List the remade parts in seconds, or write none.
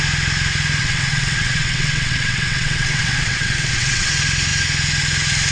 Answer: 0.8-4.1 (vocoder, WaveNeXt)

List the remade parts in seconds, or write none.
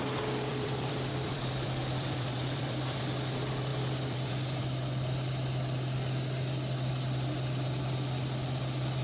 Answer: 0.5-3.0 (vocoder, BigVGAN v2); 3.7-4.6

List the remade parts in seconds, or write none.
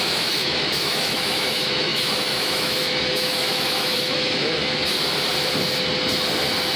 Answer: 0.0-4.9 (autoencoder, DAC-VAE)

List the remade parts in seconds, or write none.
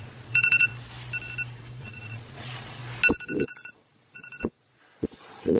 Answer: 0.0-0.7 (vocoder, Vocos); 1.8-2.8; 3.4-5.6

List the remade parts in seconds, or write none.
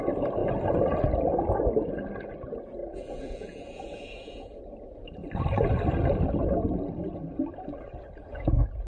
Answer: 2.8-4.6 (vocoder, Vocos); 8.3-8.9